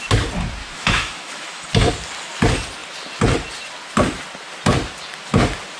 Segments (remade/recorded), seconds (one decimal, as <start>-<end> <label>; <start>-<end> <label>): 0.0-0.6 recorded; 0.6-1.6 remade; 1.6-5.8 recorded